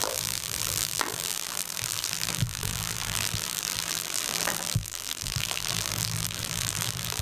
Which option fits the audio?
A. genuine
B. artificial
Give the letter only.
B